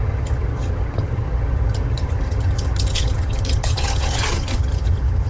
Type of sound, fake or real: fake